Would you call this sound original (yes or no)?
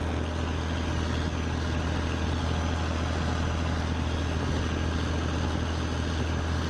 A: yes